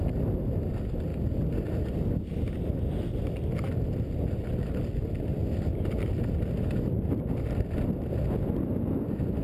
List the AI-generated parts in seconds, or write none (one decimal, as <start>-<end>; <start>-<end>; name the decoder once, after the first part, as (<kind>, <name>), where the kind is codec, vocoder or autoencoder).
none